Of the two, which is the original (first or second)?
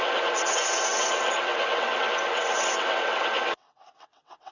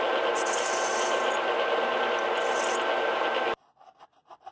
second